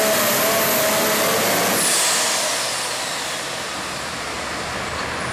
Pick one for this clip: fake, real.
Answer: real